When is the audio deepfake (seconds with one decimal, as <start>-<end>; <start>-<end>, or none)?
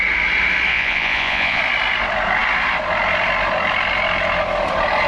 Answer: 0.7-1.6